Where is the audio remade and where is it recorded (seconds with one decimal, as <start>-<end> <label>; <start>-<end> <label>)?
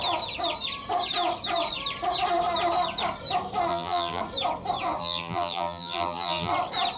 0.0-3.7 recorded; 3.7-4.2 remade; 4.2-5.0 recorded; 5.0-6.5 remade; 6.5-7.0 recorded